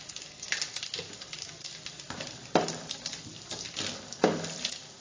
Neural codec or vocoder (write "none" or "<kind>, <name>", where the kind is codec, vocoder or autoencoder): none